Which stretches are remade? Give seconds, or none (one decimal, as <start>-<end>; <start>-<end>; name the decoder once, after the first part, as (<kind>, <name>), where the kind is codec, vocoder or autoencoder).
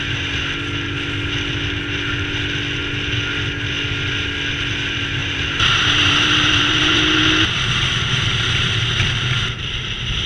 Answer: 5.2-8.7 (vocoder, BigVGAN v2)